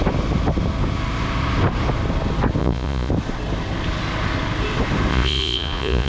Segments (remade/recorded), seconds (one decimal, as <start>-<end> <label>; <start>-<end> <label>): 0.0-2.6 recorded; 2.6-3.1 remade; 3.1-5.1 recorded; 5.1-6.1 remade